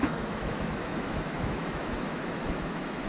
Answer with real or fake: fake